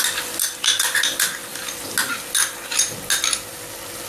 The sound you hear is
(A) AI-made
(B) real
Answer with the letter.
B